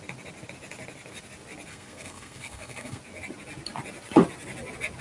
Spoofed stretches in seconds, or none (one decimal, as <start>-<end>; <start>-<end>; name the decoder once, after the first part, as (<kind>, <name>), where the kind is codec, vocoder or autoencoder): 1.7-3.0 (codec, SNAC)